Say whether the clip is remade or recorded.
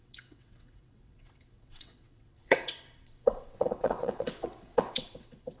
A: remade